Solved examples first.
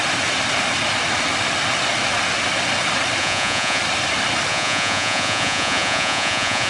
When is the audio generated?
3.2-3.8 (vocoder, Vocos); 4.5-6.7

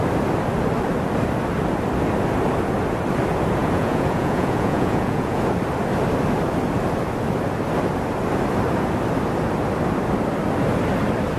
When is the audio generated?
3.6-5.4 (vocoder, Vocos)

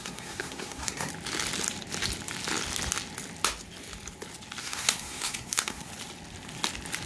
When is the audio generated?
0.0-1.1 (codec, SNAC); 4.6-5.9